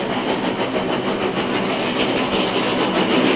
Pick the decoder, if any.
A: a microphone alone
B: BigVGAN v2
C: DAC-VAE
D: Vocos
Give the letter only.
A